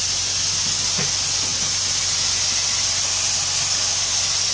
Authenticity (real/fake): real